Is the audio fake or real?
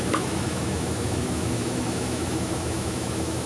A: fake